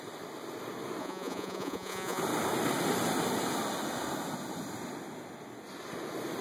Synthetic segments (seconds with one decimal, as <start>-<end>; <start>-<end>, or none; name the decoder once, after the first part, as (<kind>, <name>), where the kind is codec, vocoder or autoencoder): 1.0-2.2 (vocoder, Vocos)